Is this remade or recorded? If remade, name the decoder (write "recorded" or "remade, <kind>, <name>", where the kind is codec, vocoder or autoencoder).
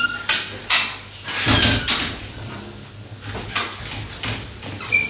recorded